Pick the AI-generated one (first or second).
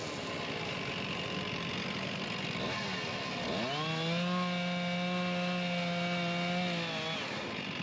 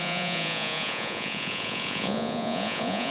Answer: second